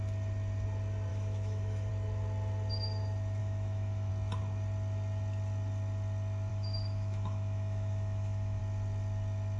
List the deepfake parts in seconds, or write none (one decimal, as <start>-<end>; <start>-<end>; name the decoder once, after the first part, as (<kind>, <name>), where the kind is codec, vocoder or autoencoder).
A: 1.1-1.9 (autoencoder, DAC-VAE); 3.4-4.1; 6.5-8.6